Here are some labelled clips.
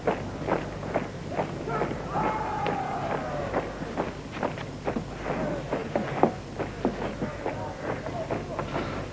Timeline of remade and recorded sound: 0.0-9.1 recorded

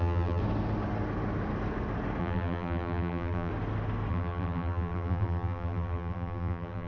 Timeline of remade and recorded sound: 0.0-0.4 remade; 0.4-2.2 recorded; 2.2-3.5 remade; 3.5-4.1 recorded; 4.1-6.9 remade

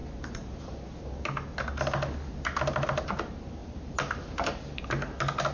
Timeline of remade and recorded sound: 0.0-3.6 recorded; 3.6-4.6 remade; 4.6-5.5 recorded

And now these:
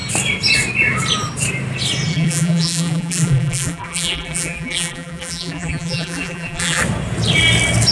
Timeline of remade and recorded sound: 0.0-2.1 recorded; 2.1-6.8 remade; 6.8-7.9 recorded